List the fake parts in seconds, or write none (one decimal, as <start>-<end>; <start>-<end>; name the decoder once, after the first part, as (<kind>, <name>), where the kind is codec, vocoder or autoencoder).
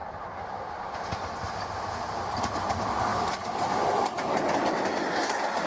none